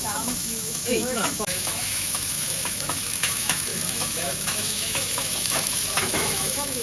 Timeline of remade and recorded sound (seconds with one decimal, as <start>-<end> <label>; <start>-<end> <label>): 0.0-6.8 remade

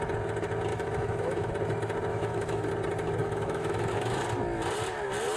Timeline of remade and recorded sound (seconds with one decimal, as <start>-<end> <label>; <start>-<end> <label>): 0.0-0.7 recorded; 0.7-1.5 remade; 1.5-2.1 recorded; 2.1-2.7 remade; 2.7-3.2 recorded; 3.2-4.2 remade; 4.2-5.4 recorded

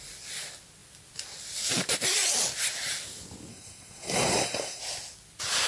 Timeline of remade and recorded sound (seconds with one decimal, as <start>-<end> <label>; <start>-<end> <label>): 0.0-3.5 recorded; 3.5-4.8 remade; 4.8-5.7 recorded

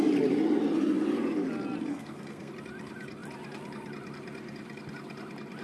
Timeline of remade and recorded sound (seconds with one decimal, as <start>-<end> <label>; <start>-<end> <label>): 0.0-1.9 recorded; 1.9-2.5 remade; 2.5-5.6 recorded

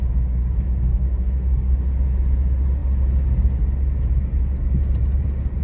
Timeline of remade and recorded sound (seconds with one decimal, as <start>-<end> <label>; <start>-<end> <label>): 0.0-0.9 recorded; 0.9-1.7 remade; 1.7-5.6 recorded

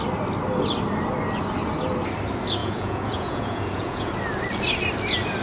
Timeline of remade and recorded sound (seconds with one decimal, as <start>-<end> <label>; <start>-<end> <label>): 0.0-2.6 recorded; 2.6-4.1 remade; 4.1-5.4 recorded